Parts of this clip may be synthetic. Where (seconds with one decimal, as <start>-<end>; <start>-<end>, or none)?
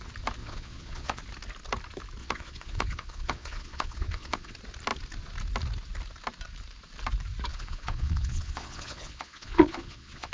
0.4-1.2; 2.2-4.5; 7.5-10.3